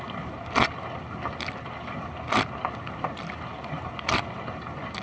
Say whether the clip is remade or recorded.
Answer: recorded